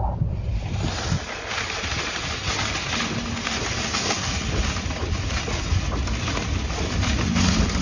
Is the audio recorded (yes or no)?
yes